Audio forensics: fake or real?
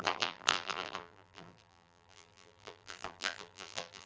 fake